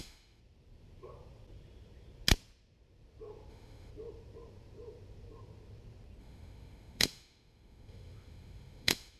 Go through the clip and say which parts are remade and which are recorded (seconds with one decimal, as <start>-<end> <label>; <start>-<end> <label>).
0.0-0.4 remade; 0.4-3.5 recorded; 3.5-3.9 remade; 3.9-6.2 recorded; 6.2-9.2 remade